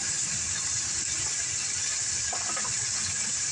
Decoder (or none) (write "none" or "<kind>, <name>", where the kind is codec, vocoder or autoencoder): none